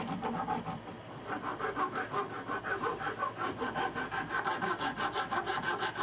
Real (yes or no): yes